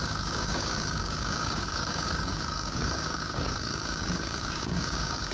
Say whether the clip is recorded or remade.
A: remade